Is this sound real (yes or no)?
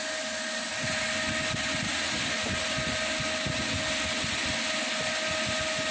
yes